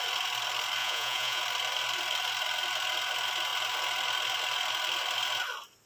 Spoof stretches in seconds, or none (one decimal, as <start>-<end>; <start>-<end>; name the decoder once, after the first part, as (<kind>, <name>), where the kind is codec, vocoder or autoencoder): 0.8-1.4 (vocoder, Vocos)